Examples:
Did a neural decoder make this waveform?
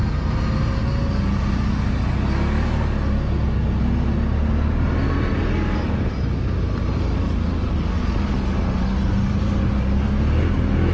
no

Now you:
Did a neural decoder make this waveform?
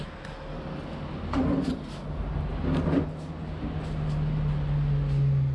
no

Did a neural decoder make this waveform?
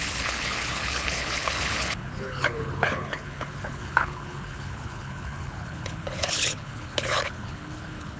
yes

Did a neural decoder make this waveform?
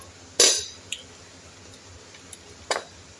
no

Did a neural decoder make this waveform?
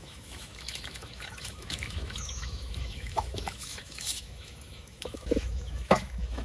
yes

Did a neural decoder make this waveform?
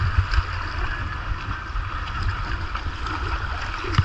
no